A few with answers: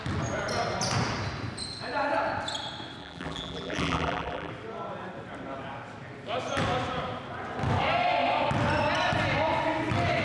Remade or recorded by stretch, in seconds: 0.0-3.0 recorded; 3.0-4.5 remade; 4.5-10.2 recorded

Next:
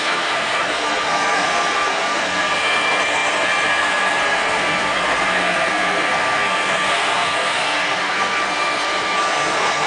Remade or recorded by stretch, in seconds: 0.0-9.9 remade